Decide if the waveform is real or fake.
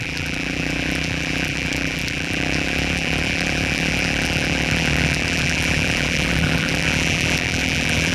fake